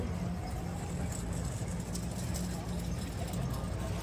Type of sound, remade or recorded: recorded